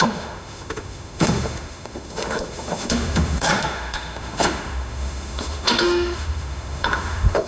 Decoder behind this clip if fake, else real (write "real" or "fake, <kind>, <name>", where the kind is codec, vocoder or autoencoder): fake, autoencoder, DAC-VAE